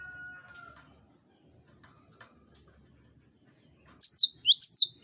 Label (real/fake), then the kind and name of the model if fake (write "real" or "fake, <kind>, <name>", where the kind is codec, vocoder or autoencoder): real